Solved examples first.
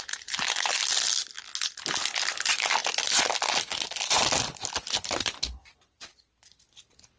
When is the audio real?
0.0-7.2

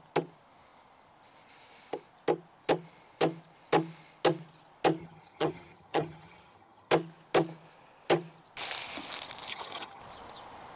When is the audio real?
0.0-5.0; 6.9-9.5; 10.0-10.8

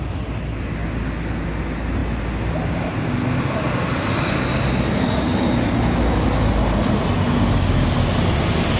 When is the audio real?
0.0-8.8

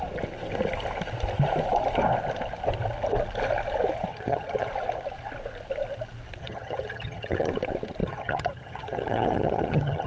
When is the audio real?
0.0-4.1; 4.7-6.4; 7.5-8.0

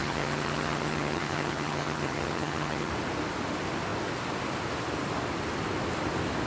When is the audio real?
2.9-6.5

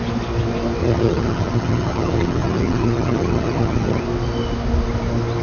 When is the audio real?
0.0-0.8; 4.0-5.4